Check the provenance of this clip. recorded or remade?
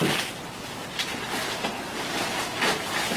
recorded